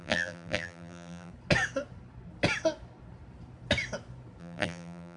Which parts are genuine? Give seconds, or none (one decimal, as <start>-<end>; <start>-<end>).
1.3-4.4